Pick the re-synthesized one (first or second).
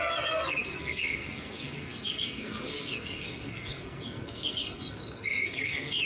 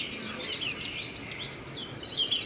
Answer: first